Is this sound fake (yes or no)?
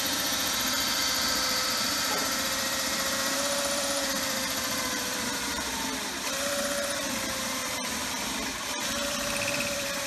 yes